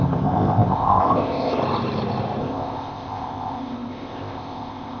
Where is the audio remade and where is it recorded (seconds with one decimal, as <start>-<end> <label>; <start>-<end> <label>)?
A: 0.0-1.6 remade; 1.6-2.4 recorded; 2.4-5.0 remade